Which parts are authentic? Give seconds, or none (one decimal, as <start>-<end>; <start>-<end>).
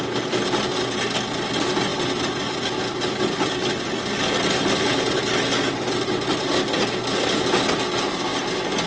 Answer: 0.0-8.9